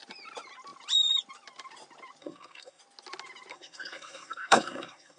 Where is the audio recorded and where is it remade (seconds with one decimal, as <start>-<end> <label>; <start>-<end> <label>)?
0.0-2.2 recorded; 2.2-2.8 remade; 2.8-3.5 recorded; 3.5-5.2 remade